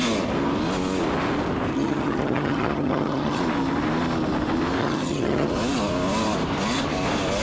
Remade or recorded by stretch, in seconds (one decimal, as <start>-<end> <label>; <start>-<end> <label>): 0.0-1.7 recorded; 1.7-3.4 remade; 3.4-4.8 recorded; 4.8-5.5 remade; 5.5-7.4 recorded